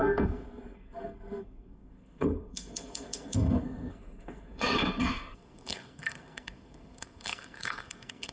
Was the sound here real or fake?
fake